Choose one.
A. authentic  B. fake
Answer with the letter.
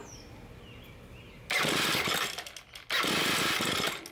A